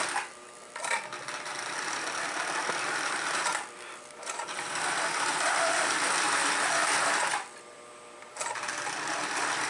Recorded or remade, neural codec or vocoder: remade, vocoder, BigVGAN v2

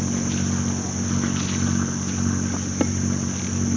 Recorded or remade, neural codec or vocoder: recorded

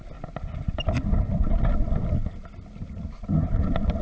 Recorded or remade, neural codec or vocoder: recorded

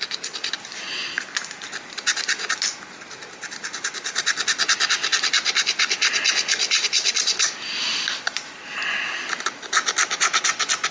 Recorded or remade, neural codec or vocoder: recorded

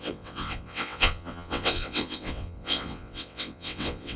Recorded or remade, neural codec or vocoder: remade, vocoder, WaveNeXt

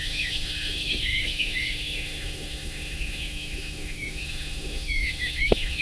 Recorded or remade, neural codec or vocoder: remade, autoencoder, DAC-VAE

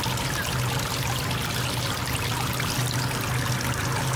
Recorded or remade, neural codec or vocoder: recorded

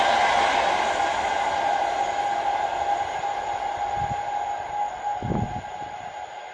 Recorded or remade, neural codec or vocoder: recorded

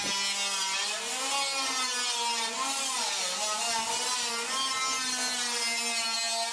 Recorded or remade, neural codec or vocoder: recorded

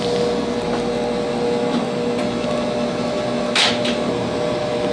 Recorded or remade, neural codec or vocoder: recorded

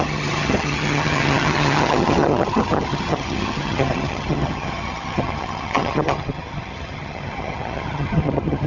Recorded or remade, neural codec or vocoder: remade, vocoder, HiFi-GAN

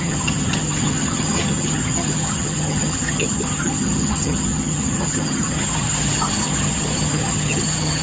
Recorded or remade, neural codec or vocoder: remade, vocoder, HiFi-GAN